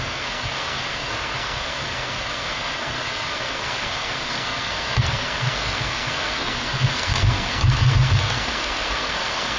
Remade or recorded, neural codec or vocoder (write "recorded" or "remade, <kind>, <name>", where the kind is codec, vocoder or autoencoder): remade, codec, SNAC